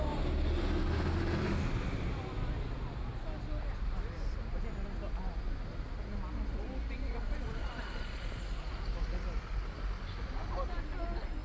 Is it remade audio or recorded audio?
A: recorded